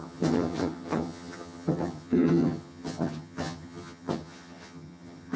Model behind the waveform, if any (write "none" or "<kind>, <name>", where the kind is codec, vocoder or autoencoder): vocoder, HiFi-GAN